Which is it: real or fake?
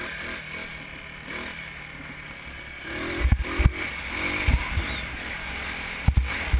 real